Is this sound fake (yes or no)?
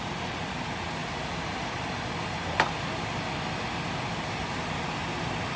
no